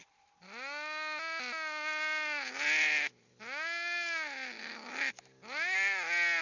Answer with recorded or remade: recorded